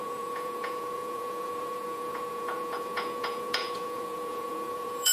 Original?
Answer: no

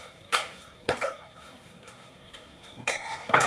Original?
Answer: no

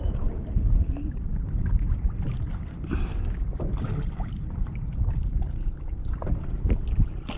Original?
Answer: yes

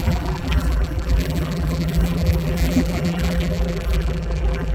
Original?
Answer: no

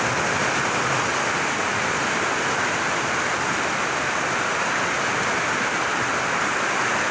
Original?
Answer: yes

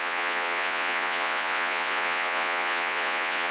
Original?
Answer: no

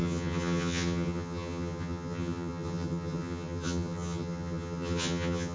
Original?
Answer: no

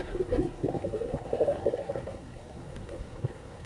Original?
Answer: no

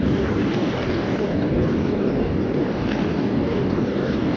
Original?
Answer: no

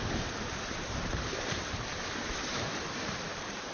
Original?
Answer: no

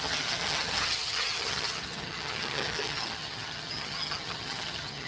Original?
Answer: no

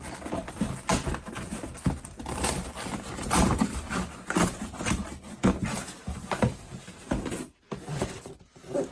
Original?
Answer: yes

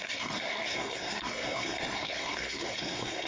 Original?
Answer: no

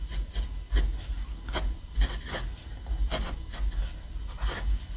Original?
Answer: yes